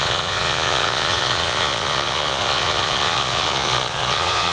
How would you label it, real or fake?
fake